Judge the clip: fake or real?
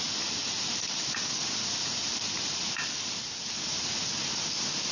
real